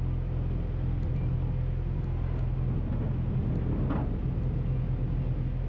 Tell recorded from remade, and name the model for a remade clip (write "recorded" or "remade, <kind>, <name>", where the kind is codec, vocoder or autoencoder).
recorded